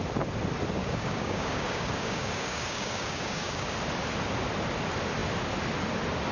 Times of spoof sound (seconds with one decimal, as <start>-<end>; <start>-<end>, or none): 0.8-3.7